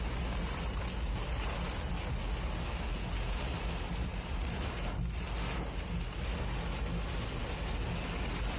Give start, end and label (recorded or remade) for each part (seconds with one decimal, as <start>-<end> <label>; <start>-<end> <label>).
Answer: 0.0-8.6 recorded